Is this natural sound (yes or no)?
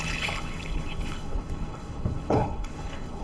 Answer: no